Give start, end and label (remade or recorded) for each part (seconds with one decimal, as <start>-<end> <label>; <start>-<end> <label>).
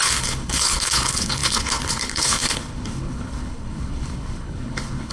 0.0-5.1 remade